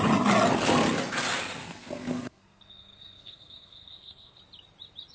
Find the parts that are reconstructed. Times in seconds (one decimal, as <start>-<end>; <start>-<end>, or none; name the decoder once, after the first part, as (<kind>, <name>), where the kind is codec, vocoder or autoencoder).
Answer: 1.6-4.4 (codec, SNAC)